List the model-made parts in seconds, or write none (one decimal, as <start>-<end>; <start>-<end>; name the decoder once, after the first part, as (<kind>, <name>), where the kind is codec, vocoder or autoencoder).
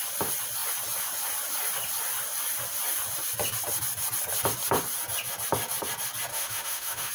6.3-7.1 (autoencoder, DAC-VAE)